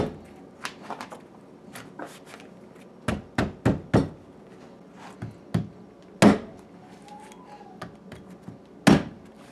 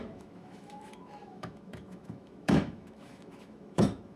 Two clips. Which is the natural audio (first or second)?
first